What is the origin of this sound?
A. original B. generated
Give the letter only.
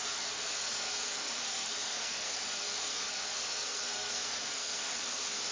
B